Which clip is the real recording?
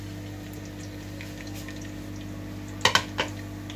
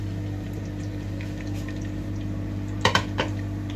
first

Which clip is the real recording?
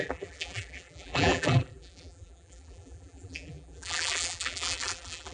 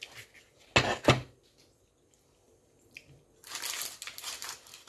second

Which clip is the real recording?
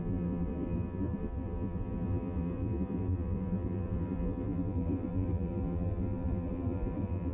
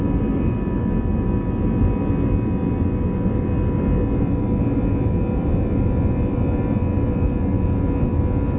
second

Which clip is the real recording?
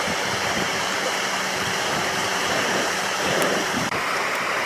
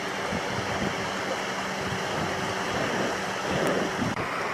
second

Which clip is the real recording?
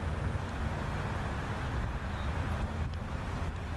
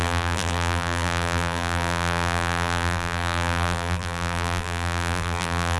first